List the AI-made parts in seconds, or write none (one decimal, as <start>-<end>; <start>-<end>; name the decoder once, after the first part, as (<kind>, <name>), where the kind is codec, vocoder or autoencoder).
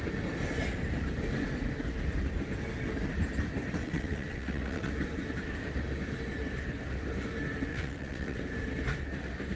3.8-4.9 (vocoder, WaveNeXt); 7.7-8.4